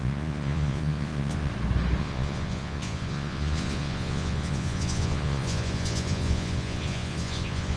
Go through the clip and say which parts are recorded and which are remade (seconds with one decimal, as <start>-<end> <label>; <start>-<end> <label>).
0.0-1.5 remade; 1.5-2.0 recorded; 2.0-7.8 remade